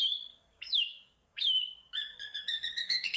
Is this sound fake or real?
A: fake